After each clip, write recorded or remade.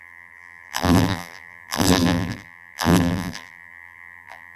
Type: remade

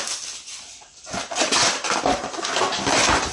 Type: recorded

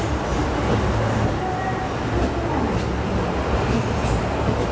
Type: recorded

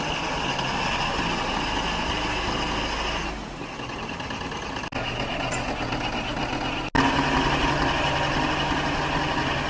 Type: recorded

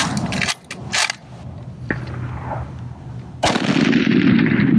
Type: recorded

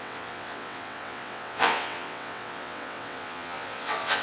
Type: remade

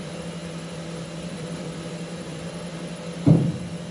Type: remade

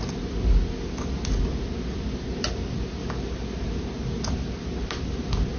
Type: recorded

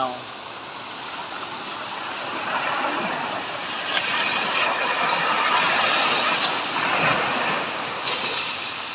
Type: recorded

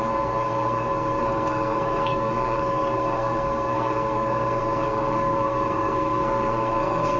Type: remade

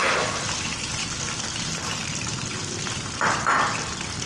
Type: recorded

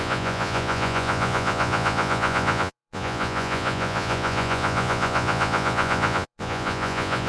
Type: remade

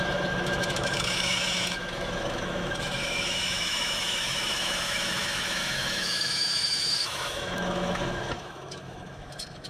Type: remade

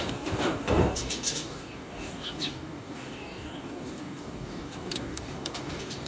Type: remade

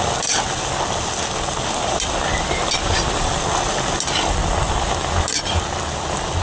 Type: recorded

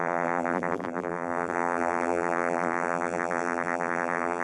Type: remade